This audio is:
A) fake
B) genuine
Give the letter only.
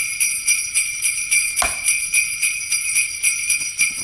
B